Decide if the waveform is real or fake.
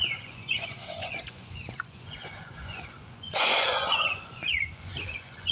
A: fake